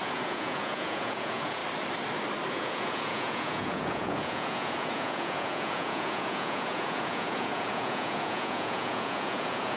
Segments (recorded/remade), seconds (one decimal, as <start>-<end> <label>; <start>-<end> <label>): 0.0-1.6 remade; 1.6-2.5 recorded; 2.5-9.8 remade

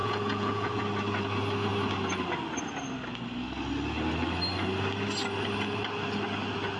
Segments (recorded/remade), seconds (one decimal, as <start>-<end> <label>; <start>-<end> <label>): 0.0-0.8 remade; 0.8-6.8 recorded

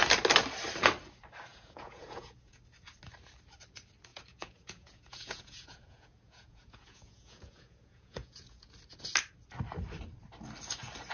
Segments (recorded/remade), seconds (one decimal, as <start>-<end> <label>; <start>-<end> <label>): 0.0-1.5 recorded; 1.5-2.6 remade; 2.6-4.1 recorded; 4.1-8.7 remade; 8.7-11.1 recorded

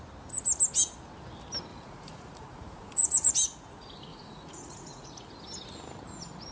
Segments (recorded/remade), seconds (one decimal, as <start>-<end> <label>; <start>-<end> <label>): 0.0-1.7 recorded; 1.7-3.3 remade; 3.3-4.1 recorded; 4.1-5.1 remade; 5.1-6.5 recorded

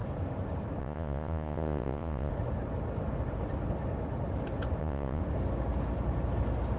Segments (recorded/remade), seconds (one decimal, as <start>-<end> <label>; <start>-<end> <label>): 0.0-0.8 recorded; 0.8-2.3 remade; 2.3-4.8 recorded; 4.8-5.2 remade; 5.2-6.8 recorded